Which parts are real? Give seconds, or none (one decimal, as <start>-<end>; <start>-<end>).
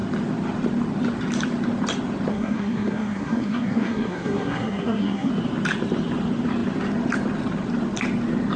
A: 0.0-2.3; 5.3-8.6